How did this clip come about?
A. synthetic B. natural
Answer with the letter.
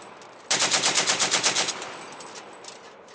B